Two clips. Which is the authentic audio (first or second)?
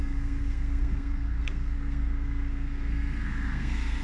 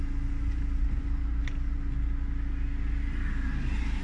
second